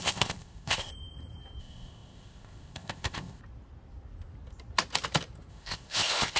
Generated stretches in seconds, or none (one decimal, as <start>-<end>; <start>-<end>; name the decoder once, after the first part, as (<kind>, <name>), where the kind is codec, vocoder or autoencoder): 0.0-0.9 (codec, ZipCodec); 1.6-3.4; 5.5-6.4